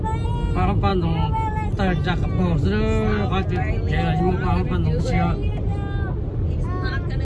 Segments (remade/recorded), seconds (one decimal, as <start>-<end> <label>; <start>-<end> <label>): 0.0-7.2 recorded